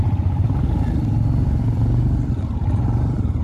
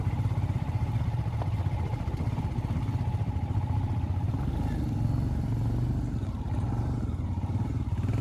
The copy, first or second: first